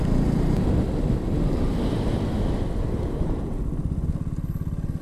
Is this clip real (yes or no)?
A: yes